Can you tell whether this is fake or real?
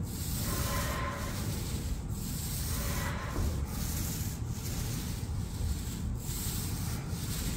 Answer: real